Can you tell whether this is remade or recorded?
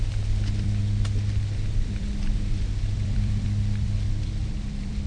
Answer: remade